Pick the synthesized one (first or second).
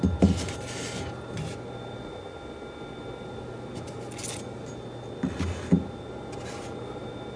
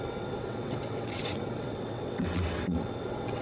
second